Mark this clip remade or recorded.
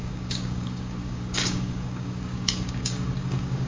remade